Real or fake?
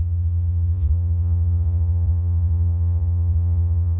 fake